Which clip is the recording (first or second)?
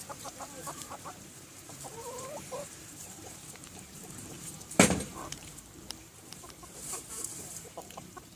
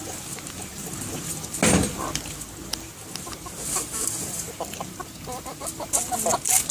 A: second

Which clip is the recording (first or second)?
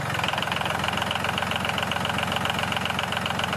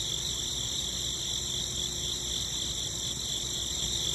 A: first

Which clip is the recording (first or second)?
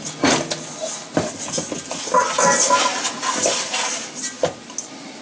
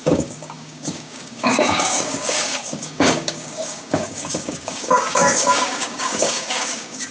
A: first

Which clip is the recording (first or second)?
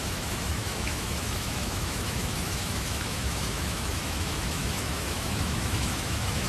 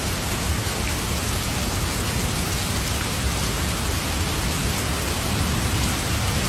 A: second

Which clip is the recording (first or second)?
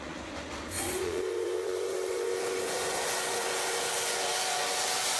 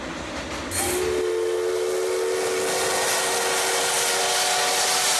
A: second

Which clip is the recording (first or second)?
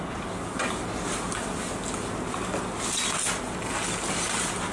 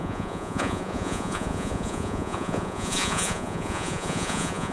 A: first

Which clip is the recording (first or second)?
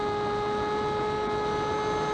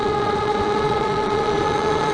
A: first